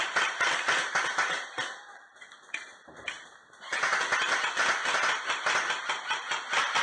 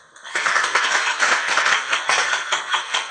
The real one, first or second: first